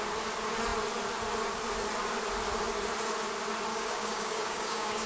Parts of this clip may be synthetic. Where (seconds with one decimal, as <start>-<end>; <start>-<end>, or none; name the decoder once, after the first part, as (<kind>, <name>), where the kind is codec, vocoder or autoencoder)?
3.7-5.1 (codec, DAC)